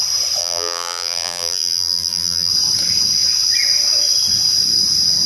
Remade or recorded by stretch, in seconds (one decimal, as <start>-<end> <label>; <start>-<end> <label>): 0.0-0.4 recorded; 0.4-2.5 remade; 2.5-5.3 recorded